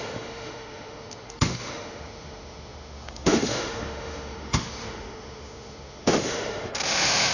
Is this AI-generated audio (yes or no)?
yes